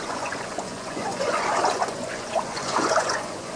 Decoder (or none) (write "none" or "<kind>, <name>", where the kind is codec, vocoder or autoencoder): vocoder, Vocos